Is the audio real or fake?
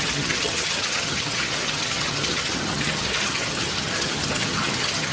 fake